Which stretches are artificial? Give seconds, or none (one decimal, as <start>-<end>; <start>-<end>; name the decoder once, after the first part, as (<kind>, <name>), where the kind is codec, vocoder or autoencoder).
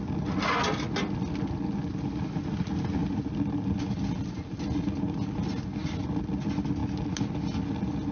none